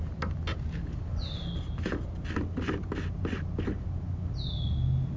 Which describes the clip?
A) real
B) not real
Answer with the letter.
A